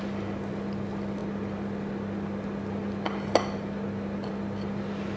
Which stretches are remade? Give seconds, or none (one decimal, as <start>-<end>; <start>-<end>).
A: none